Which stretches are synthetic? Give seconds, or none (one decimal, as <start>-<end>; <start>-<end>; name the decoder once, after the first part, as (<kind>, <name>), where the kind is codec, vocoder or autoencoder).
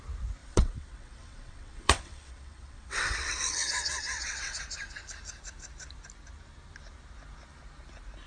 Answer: 0.4-4.6 (vocoder, WaveNeXt)